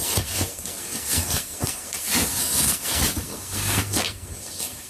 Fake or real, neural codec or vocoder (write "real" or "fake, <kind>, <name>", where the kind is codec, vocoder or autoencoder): fake, codec, SNAC